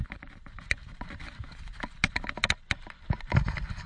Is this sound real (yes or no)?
yes